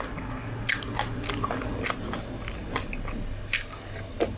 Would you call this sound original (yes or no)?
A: yes